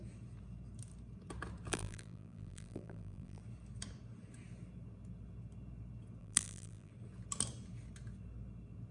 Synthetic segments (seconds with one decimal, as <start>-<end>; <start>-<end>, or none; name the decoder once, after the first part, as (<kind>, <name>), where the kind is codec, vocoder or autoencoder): 1.7-3.4 (vocoder, BigVGAN v2); 6.2-6.9